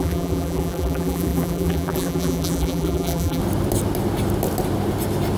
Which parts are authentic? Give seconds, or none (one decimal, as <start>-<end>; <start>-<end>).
3.4-5.4